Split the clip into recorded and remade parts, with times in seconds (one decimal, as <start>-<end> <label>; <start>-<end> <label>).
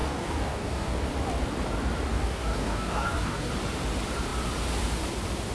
0.0-1.1 remade; 1.1-2.1 recorded; 2.1-3.5 remade; 3.5-5.5 recorded